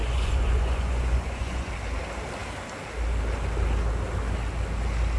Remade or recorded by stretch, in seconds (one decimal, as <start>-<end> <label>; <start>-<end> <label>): 0.0-1.7 remade; 1.7-5.2 recorded